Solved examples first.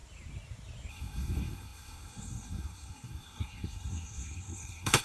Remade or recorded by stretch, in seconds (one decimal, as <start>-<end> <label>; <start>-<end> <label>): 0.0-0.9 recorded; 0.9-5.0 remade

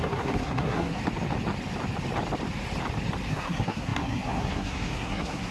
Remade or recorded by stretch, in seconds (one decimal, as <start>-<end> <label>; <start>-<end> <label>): 0.0-1.0 remade; 1.0-3.3 recorded; 3.3-5.5 remade

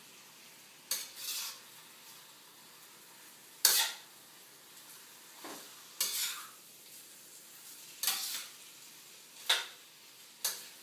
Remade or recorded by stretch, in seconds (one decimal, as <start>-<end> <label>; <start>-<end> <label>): 0.0-10.8 recorded